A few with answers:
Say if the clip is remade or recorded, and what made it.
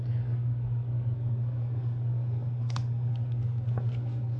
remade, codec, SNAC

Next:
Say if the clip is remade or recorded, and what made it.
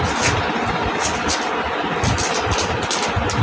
recorded